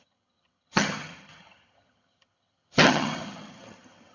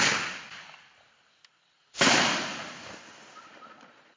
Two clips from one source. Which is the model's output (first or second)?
first